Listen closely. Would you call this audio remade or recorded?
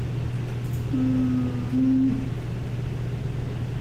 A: recorded